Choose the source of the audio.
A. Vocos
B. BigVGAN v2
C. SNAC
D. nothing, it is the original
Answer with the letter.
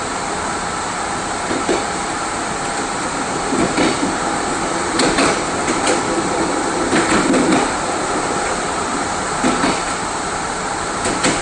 B